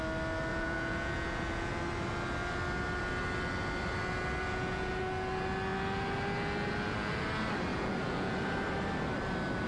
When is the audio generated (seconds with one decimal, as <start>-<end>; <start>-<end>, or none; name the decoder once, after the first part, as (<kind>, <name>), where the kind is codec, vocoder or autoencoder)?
0.5-1.7 (vocoder, Vocos); 4.4-5.0; 7.7-8.4